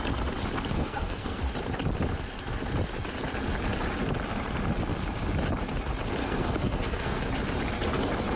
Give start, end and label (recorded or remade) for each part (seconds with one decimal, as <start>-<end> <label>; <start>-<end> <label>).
0.0-0.7 recorded; 0.7-1.4 remade; 1.4-6.2 recorded; 6.2-7.2 remade; 7.2-8.4 recorded